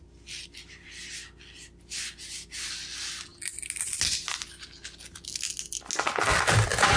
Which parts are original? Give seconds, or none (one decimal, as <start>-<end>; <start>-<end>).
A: 0.0-7.0